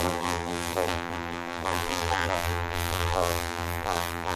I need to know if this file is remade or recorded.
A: remade